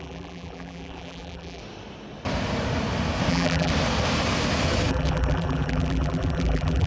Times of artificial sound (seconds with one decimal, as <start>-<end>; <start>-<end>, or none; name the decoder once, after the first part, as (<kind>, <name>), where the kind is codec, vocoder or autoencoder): 0.0-1.6 (vocoder, BigVGAN v2); 3.3-3.7; 4.9-6.9